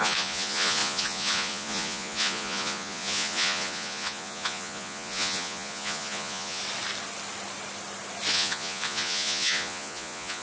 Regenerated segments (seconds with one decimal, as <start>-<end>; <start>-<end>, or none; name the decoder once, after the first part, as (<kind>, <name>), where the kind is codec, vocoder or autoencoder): 0.0-6.6 (vocoder, Vocos); 8.3-10.4